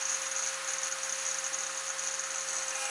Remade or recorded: recorded